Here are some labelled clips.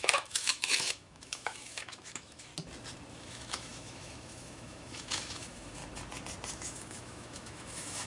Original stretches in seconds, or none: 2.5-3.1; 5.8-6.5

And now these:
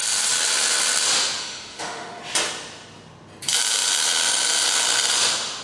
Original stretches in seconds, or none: 0.0-1.4; 2.2-5.6

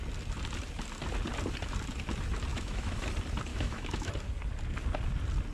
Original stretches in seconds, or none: 0.0-2.5; 3.1-3.5; 4.1-5.5

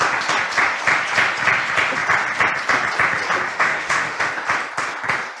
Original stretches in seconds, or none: 0.0-3.5; 4.3-5.4

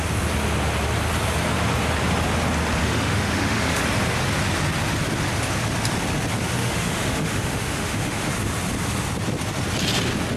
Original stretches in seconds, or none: 0.0-2.8; 3.8-6.6; 8.3-10.4

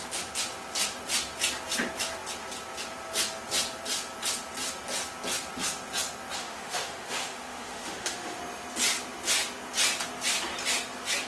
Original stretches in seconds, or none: 0.0-6.4; 8.4-11.3

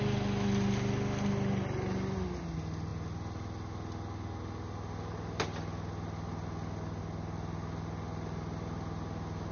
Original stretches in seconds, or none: 0.0-9.5

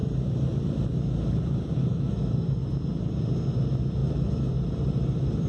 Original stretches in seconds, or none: 0.0-1.9; 2.7-4.0; 4.5-5.5